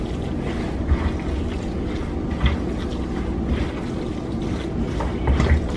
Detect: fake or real real